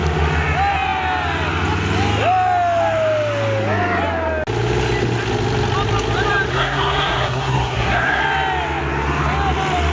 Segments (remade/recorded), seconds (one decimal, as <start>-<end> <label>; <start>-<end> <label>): 0.0-6.5 recorded; 6.5-8.2 remade; 8.2-9.9 recorded